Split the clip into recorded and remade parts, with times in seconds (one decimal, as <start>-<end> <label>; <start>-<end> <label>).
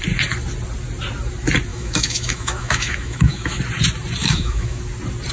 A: 0.0-1.7 recorded; 1.7-3.6 remade; 3.6-4.2 recorded; 4.2-4.8 remade; 4.8-5.3 recorded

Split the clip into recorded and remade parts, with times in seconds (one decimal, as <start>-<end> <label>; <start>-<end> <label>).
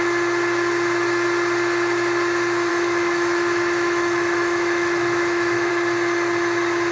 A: 0.0-2.7 recorded; 2.7-5.7 remade; 5.7-6.9 recorded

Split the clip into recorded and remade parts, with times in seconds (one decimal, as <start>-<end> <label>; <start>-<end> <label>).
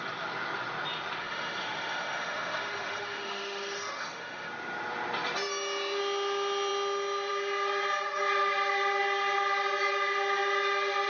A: 0.0-1.2 recorded; 1.2-4.5 remade; 4.5-11.1 recorded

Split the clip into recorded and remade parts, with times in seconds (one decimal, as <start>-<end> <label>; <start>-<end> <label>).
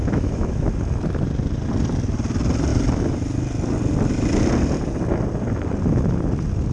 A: 0.0-0.7 remade; 0.7-6.7 recorded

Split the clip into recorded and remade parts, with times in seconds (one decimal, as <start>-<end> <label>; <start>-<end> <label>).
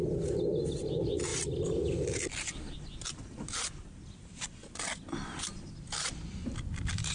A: 0.0-7.1 recorded